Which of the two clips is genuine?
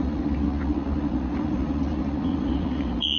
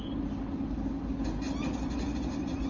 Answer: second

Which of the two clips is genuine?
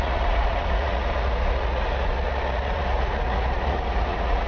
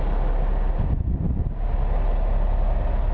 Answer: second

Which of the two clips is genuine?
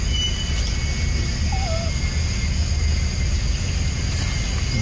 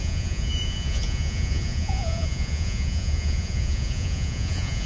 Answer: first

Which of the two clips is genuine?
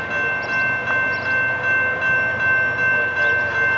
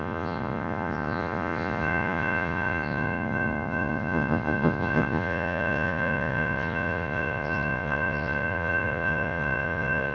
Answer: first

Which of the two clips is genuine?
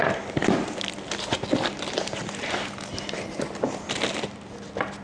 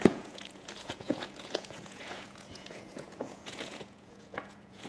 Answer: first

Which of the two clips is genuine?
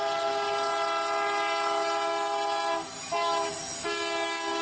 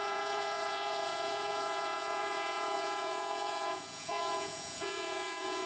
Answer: first